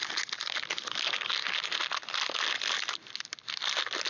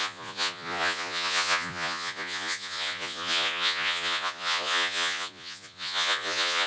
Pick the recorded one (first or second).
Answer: first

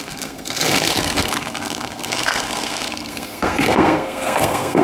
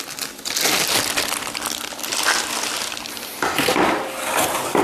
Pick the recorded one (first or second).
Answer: second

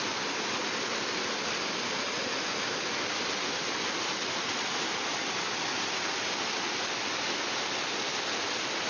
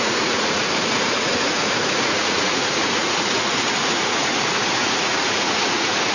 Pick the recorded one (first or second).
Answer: first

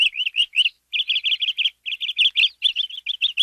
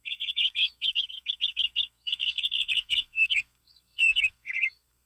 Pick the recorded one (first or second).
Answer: first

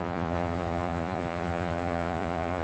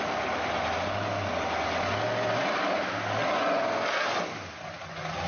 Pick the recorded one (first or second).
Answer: second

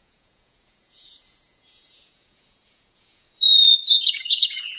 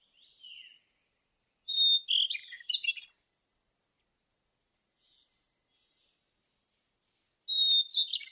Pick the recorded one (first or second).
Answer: second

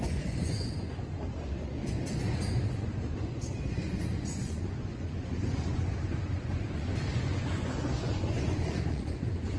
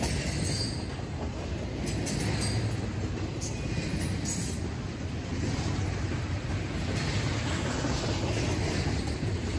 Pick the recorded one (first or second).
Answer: second